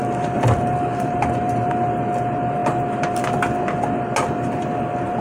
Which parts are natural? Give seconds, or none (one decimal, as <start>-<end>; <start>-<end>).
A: 1.5-5.2